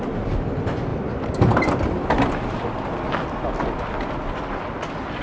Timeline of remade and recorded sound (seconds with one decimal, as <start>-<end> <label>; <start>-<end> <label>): 0.0-5.2 recorded